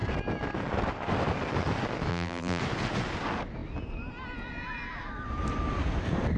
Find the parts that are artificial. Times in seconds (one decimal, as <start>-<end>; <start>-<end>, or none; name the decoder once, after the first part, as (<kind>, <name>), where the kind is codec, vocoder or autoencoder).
2.1-2.6 (vocoder, BigVGAN v2)